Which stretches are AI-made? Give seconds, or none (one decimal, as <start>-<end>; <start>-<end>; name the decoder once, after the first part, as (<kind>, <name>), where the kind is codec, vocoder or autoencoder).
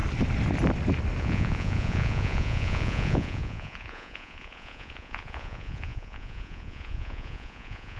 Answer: 1.2-8.0 (vocoder, Vocos)